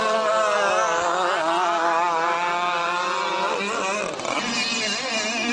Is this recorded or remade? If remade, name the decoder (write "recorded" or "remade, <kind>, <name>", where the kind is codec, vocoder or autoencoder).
recorded